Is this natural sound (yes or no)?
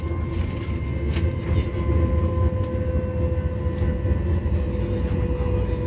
yes